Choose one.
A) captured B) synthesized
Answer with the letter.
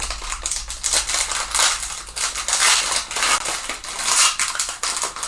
A